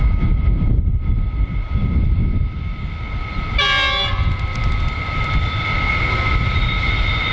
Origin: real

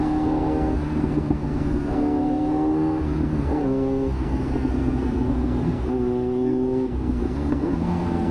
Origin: fake